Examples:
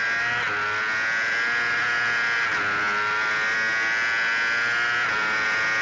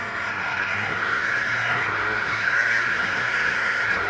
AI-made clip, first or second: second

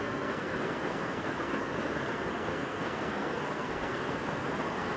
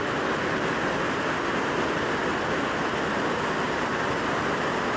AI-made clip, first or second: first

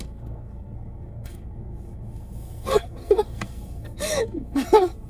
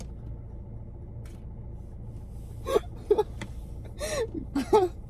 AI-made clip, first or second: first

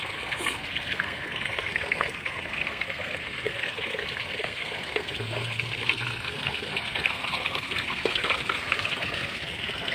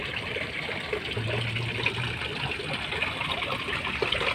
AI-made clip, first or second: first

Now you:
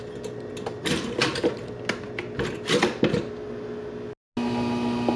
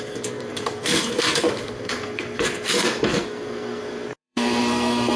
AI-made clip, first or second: second